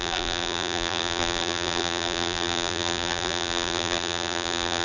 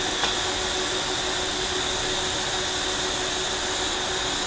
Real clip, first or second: second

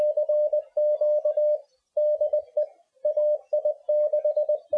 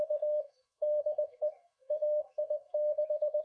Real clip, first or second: first